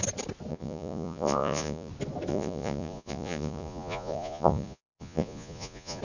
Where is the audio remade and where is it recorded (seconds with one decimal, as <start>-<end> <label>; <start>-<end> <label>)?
0.0-0.5 recorded; 0.5-1.9 remade; 1.9-2.3 recorded; 2.3-6.0 remade